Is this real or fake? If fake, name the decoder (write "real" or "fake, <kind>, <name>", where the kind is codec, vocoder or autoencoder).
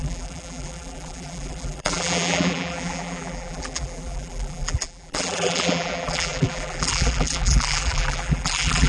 fake, vocoder, BigVGAN v2